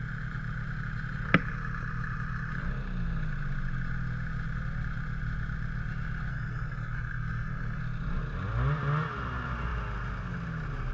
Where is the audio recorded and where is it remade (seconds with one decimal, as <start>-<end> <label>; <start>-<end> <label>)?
0.0-6.3 recorded; 6.3-7.8 remade; 7.8-10.9 recorded